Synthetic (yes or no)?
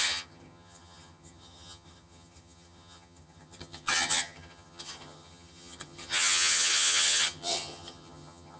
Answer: yes